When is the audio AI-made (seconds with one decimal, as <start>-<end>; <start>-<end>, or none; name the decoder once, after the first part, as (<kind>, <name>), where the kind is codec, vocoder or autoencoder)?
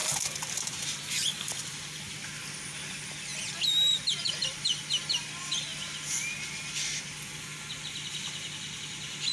0.0-1.8 (vocoder, BigVGAN v2)